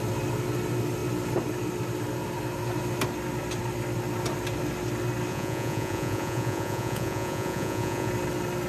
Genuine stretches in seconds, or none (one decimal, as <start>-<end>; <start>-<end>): 0.0-5.3; 8.1-8.7

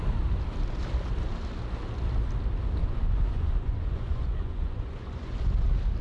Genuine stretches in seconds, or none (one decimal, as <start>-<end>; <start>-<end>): 0.0-2.8; 5.3-6.0

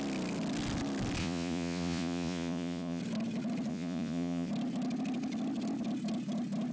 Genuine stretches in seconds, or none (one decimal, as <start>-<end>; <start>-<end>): 0.0-1.2; 3.0-3.7; 4.5-6.7

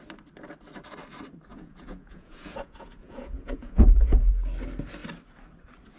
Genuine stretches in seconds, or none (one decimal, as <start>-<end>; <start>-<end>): 0.0-1.5; 4.3-6.0

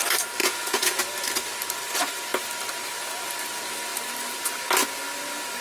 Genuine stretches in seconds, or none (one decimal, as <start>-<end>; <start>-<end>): 0.0-0.4; 1.0-5.6

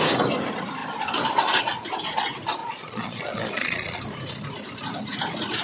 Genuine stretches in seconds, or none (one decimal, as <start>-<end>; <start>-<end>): 0.0-2.6; 4.0-5.6

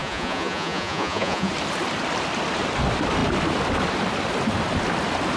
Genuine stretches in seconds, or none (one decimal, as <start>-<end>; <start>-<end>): 1.5-5.4